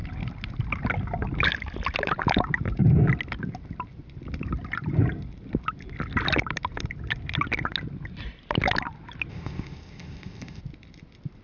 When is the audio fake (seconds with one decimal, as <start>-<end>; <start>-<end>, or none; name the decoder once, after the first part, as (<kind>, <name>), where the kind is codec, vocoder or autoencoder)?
9.3-10.6 (codec, ZipCodec)